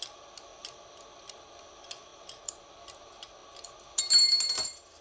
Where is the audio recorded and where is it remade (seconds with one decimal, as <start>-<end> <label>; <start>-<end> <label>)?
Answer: 0.0-2.1 recorded; 2.1-2.7 remade; 2.7-5.0 recorded